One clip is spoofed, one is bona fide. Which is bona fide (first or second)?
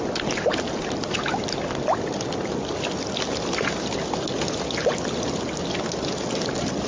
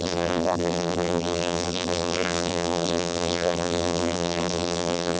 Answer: first